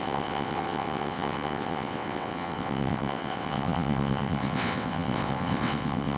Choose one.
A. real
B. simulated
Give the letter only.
B